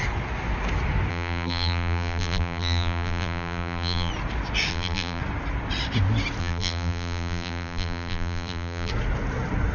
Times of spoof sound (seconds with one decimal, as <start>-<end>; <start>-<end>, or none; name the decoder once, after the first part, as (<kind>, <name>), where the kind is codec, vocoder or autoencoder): 1.1-4.1 (vocoder, BigVGAN v2); 4.7-5.2; 6.4-8.9